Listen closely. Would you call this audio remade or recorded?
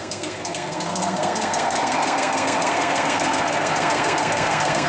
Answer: remade